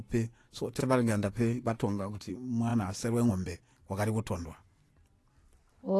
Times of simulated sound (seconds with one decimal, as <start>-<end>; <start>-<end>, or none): 0.8-2.3